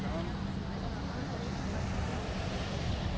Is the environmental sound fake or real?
real